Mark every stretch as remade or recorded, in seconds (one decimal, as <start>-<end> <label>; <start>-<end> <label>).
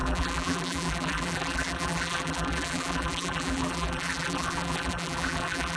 0.0-5.8 remade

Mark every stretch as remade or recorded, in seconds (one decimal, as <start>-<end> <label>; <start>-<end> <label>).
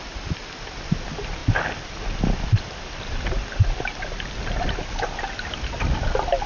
0.0-1.4 recorded; 1.4-4.7 remade; 4.7-6.5 recorded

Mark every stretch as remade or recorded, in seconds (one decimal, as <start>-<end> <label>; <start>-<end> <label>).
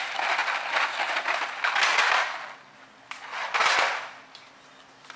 0.0-5.2 recorded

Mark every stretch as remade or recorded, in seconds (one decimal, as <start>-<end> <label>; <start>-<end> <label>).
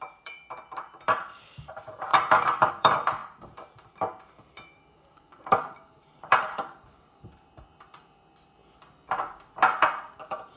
0.0-8.6 remade; 8.6-9.6 recorded; 9.6-10.6 remade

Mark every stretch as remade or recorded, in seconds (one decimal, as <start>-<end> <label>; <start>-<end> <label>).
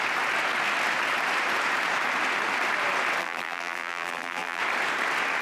0.0-3.2 recorded; 3.2-4.6 remade; 4.6-5.4 recorded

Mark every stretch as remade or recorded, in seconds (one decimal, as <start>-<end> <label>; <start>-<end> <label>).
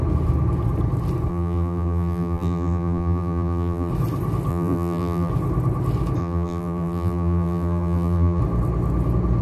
0.0-1.3 recorded; 1.3-3.9 remade; 3.9-4.5 recorded; 4.5-5.3 remade; 5.3-6.2 recorded; 6.2-8.4 remade; 8.4-9.4 recorded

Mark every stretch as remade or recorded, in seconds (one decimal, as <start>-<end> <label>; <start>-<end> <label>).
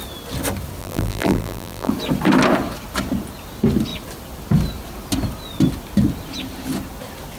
0.0-0.8 recorded; 0.8-1.9 remade; 1.9-7.4 recorded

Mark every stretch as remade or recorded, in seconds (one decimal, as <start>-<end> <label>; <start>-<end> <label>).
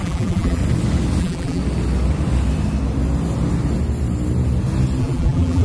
0.0-0.6 remade; 0.6-1.2 recorded; 1.2-1.6 remade; 1.6-5.0 recorded; 5.0-5.6 remade